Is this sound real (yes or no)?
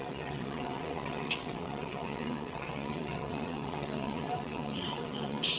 no